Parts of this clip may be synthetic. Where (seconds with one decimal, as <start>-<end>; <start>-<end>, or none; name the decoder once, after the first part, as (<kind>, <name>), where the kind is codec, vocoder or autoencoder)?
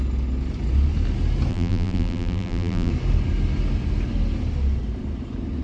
1.5-2.9 (vocoder, BigVGAN v2)